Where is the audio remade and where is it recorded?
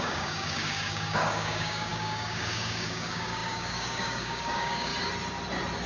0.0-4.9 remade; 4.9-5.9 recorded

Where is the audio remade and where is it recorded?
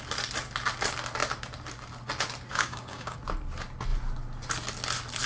0.0-2.5 recorded; 2.5-3.2 remade; 3.2-5.3 recorded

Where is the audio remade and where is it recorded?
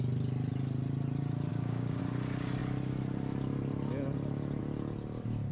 0.0-1.5 recorded; 1.5-2.0 remade; 2.0-5.5 recorded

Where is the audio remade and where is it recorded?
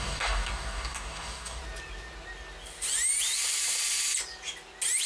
0.0-1.6 remade; 1.6-5.1 recorded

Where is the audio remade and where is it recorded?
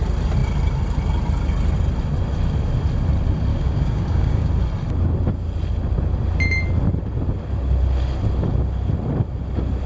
0.0-3.5 recorded; 3.5-4.5 remade; 4.5-9.9 recorded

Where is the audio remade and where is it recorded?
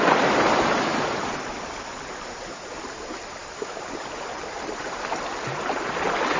0.0-6.4 recorded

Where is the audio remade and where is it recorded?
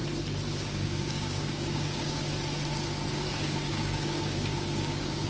0.0-0.6 recorded; 0.6-2.2 remade; 2.2-3.3 recorded; 3.3-5.3 remade